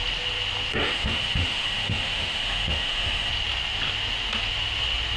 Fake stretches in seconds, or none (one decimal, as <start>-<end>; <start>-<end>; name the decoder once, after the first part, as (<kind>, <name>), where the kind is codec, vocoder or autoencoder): 0.7-3.3 (autoencoder, DAC-VAE)